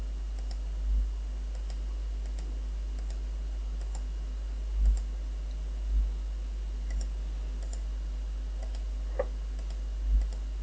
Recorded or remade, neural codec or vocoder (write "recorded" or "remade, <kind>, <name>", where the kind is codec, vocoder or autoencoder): recorded